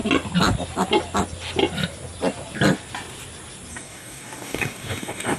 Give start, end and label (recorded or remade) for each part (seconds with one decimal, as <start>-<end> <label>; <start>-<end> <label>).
0.0-3.7 recorded; 3.7-5.4 remade